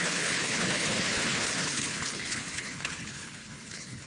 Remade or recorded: remade